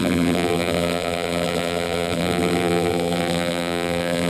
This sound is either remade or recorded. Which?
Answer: remade